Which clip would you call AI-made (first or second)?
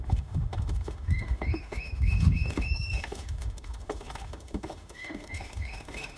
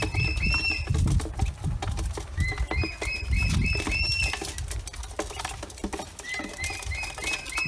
first